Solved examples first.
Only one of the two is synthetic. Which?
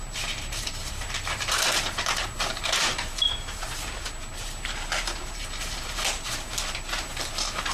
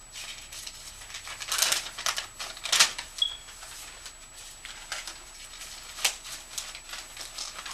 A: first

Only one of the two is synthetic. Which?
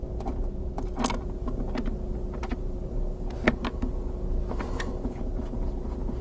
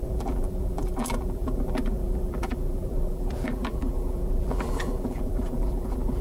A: second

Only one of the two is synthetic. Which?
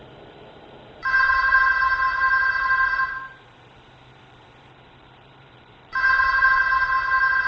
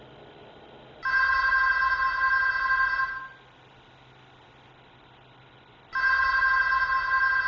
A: first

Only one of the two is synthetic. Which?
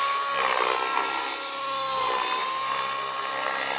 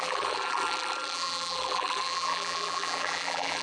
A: second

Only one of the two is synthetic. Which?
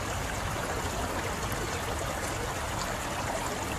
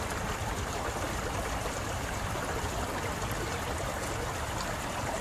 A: second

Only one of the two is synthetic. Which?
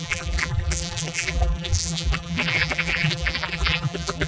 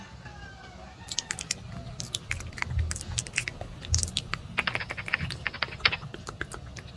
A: first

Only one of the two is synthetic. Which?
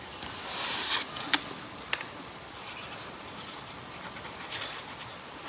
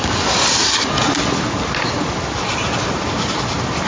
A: first